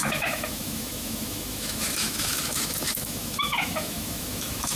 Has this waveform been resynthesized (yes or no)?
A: yes